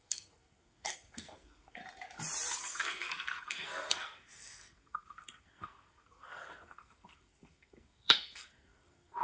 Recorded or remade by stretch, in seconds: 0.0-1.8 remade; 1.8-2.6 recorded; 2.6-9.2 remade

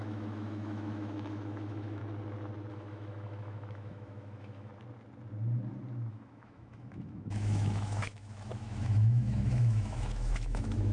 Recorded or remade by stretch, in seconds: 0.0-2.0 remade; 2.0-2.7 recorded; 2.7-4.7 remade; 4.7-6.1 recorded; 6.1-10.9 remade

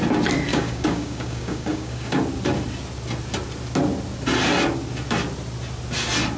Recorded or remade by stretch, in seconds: 0.0-0.5 recorded; 0.5-2.2 remade; 2.2-6.4 recorded

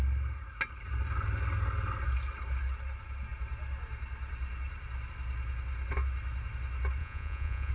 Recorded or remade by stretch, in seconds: 0.0-7.0 recorded; 7.0-7.7 remade

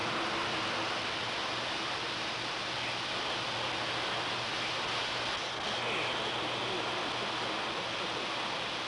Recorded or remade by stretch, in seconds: 0.0-8.9 recorded